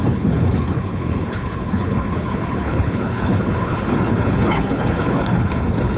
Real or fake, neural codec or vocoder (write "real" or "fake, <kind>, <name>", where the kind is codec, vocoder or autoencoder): fake, codec, HILCodec